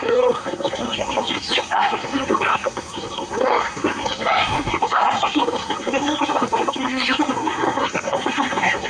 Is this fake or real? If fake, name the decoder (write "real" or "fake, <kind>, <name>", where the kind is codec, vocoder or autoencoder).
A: fake, codec, SNAC